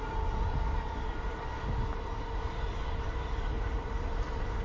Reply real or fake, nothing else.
real